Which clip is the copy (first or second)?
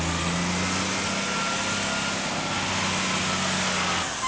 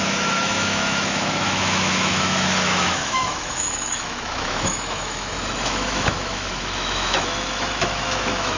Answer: second